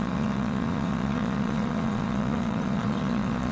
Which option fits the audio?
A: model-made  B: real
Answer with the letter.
A